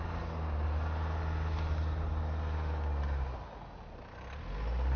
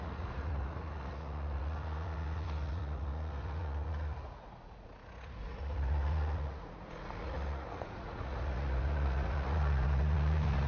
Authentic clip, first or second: first